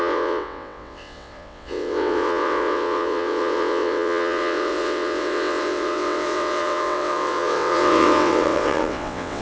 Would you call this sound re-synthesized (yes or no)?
yes